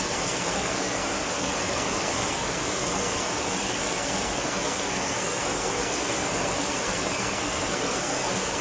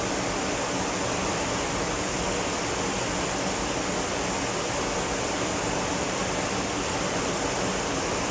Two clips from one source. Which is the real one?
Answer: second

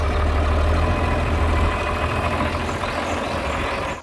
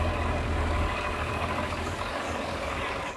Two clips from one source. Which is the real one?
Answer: first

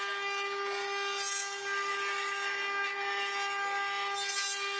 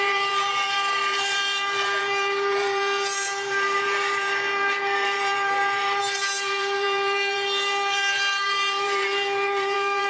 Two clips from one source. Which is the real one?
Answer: first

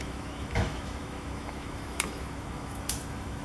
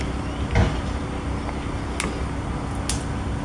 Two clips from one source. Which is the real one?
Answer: second